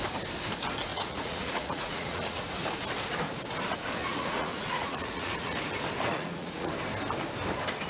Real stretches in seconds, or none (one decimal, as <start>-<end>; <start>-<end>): 0.0-0.9; 2.4-4.0; 5.6-6.1; 6.7-7.9